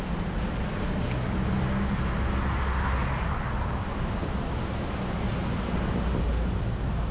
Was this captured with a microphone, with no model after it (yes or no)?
yes